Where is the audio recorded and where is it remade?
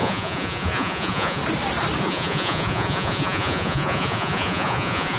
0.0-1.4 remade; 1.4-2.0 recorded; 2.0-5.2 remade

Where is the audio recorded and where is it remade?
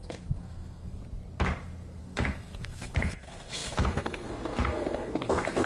0.0-1.0 remade; 1.0-2.0 recorded; 2.0-5.7 remade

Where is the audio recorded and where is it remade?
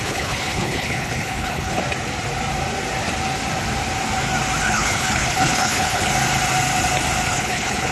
0.0-1.8 remade; 1.8-4.6 recorded; 4.6-6.1 remade; 6.1-7.3 recorded; 7.3-7.9 remade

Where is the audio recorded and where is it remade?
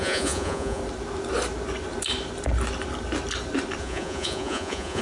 0.0-0.8 remade; 0.8-3.8 recorded; 3.8-5.0 remade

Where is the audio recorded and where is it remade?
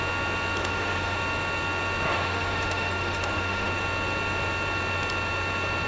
0.0-0.6 recorded; 0.6-1.2 remade; 1.2-2.1 recorded; 2.1-3.7 remade; 3.7-5.9 recorded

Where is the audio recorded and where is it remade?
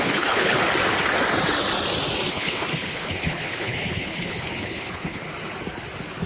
0.0-0.6 remade; 0.6-2.3 recorded; 2.3-5.3 remade; 5.3-6.3 recorded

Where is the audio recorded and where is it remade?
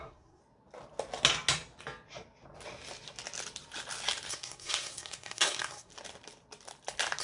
0.0-0.4 remade; 0.4-4.3 recorded; 4.3-5.9 remade; 5.9-7.2 recorded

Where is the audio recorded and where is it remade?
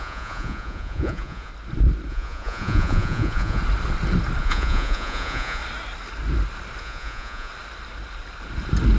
0.0-1.5 remade; 1.5-2.1 recorded; 2.1-3.6 remade; 3.6-4.4 recorded; 4.4-5.6 remade; 5.6-6.8 recorded; 6.8-7.5 remade; 7.5-9.0 recorded